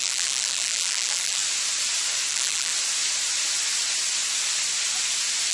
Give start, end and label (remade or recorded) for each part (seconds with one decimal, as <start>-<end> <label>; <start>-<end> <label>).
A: 0.0-1.4 remade; 1.4-2.3 recorded; 2.3-2.7 remade; 2.7-5.5 recorded